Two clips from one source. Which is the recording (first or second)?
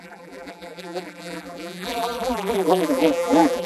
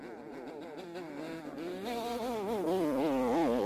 second